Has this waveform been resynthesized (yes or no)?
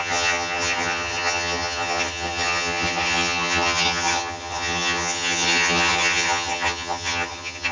yes